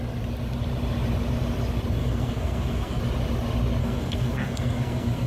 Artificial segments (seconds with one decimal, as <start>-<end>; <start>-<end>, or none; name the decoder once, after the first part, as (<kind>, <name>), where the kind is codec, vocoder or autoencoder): 2.0-3.0 (codec, SNAC); 3.8-5.3